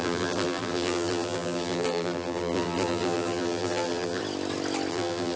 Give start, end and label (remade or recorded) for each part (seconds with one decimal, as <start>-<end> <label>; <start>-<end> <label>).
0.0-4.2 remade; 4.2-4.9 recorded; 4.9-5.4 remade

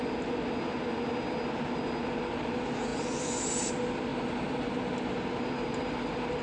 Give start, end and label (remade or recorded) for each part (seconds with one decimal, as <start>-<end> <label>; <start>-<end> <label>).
0.0-2.9 recorded; 2.9-3.5 remade; 3.5-6.4 recorded

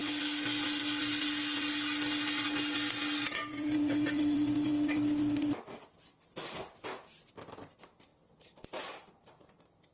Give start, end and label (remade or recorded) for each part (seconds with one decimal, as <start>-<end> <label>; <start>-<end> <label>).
0.0-3.5 recorded; 3.5-4.7 remade; 4.7-7.3 recorded; 7.3-8.1 remade; 8.1-9.2 recorded; 9.2-9.9 remade

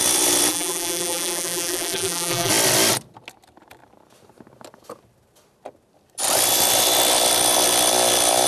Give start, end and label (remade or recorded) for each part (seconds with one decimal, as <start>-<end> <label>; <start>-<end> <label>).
0.0-0.5 recorded; 0.5-2.5 remade; 2.5-8.5 recorded

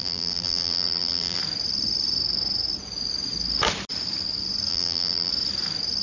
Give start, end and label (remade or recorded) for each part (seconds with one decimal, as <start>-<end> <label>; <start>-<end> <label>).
0.0-1.4 remade; 1.4-4.7 recorded; 4.7-5.3 remade; 5.3-6.0 recorded